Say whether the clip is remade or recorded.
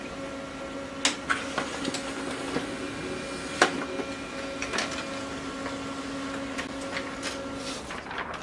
recorded